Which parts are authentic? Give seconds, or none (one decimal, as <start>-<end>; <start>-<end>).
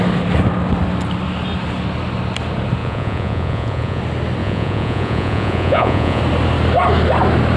0.0-2.8; 4.0-4.4; 6.2-7.6